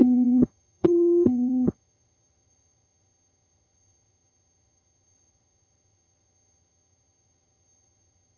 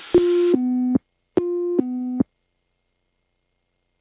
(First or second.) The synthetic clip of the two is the first